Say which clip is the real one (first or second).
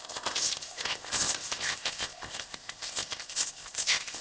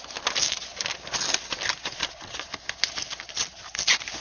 second